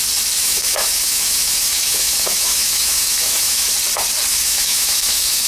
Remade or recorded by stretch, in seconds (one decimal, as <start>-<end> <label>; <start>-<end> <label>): 0.0-0.4 recorded; 0.4-3.7 remade; 3.7-4.3 recorded; 4.3-5.5 remade

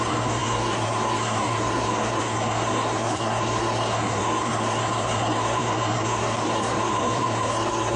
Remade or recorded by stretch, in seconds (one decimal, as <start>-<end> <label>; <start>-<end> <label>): 0.0-8.0 remade

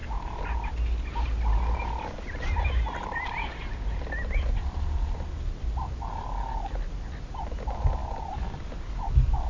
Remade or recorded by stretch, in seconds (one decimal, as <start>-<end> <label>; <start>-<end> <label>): 0.0-9.5 recorded

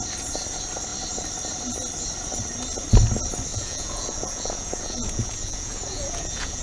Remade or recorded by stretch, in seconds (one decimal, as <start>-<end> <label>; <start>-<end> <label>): 0.0-3.5 recorded; 3.5-6.6 remade

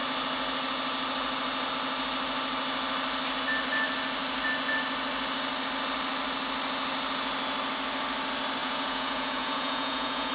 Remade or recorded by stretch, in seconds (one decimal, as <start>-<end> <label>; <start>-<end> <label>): 0.0-8.6 recorded; 8.6-10.3 remade

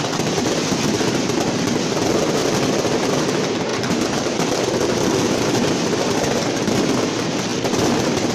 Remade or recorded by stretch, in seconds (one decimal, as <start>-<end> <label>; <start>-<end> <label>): 0.0-2.4 recorded; 2.4-3.3 remade; 3.3-3.7 recorded; 3.7-5.7 remade; 5.7-8.3 recorded

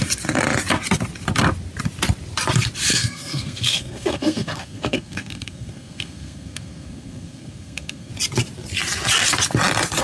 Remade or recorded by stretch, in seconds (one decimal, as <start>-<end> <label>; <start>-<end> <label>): 0.0-2.9 recorded; 2.9-8.1 remade; 8.1-10.0 recorded

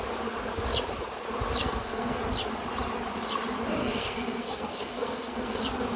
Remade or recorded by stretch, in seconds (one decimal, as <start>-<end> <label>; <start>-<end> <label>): 0.0-1.6 recorded; 1.6-2.2 remade; 2.2-3.8 recorded; 3.8-5.6 remade; 5.6-6.0 recorded